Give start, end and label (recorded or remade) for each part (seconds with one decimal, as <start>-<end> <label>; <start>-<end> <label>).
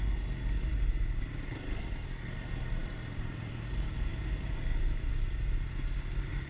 0.0-0.7 recorded; 0.7-1.2 remade; 1.2-2.8 recorded; 2.8-3.5 remade; 3.5-6.5 recorded